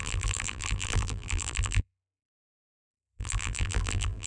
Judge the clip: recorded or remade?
remade